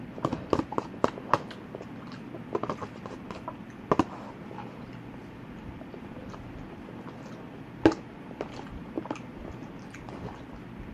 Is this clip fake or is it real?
real